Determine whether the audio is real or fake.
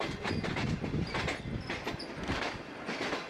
real